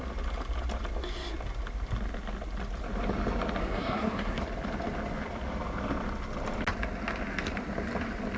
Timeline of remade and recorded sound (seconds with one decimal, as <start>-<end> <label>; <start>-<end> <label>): 0.0-3.6 recorded; 3.6-4.4 remade; 4.4-8.4 recorded